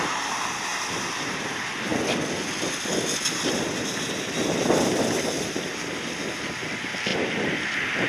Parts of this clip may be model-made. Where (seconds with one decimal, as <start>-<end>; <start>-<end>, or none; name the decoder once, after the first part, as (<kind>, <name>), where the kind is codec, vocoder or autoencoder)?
none